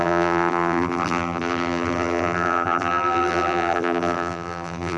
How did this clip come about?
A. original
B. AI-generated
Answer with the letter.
B